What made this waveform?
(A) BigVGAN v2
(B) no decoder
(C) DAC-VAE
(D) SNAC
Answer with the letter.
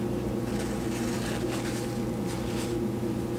B